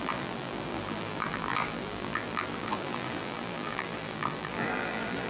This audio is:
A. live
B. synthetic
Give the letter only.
B